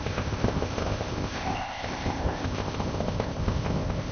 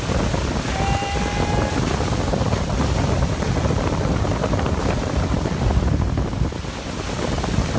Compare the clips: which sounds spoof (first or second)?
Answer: first